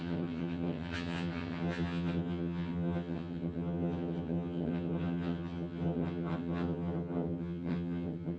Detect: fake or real fake